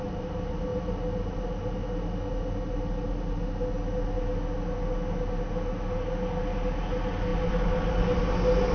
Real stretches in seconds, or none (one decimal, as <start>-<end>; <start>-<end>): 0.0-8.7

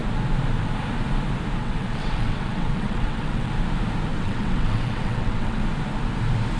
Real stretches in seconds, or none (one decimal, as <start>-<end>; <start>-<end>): 0.0-1.6; 3.5-4.1; 5.6-6.6

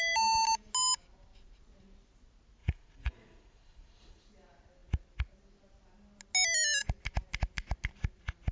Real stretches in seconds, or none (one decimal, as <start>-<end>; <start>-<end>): 0.0-2.6; 4.2-8.5

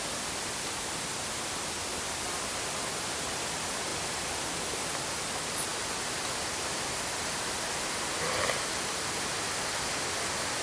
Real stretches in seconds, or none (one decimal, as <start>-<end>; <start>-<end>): 0.0-10.6

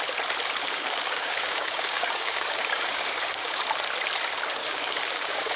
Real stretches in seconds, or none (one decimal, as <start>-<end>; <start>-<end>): 0.0-0.6; 3.6-4.6